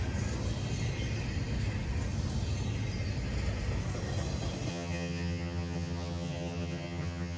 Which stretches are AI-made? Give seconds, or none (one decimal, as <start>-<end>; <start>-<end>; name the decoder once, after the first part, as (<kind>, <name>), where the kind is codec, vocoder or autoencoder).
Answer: 4.7-7.4 (vocoder, HiFi-GAN)